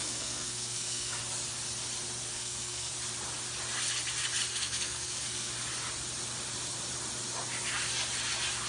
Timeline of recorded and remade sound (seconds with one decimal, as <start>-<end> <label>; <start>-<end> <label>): 0.0-1.2 remade; 1.2-2.3 recorded; 2.3-2.9 remade; 2.9-4.5 recorded; 4.5-5.5 remade; 5.5-8.7 recorded